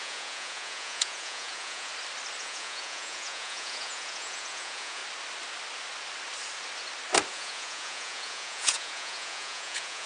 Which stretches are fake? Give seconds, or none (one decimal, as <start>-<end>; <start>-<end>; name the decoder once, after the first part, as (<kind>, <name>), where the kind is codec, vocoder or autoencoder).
0.0-1.9 (vocoder, Vocos); 2.4-5.0; 7.3-10.1